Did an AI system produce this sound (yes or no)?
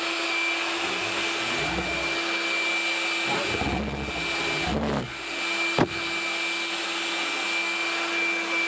no